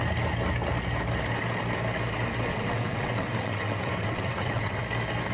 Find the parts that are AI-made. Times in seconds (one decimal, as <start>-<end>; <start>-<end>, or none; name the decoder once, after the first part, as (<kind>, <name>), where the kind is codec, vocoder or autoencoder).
2.5-4.8 (vocoder, WaveNeXt)